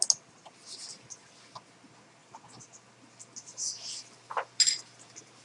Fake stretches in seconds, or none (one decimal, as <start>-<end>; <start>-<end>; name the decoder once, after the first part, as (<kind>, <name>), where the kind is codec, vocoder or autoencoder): none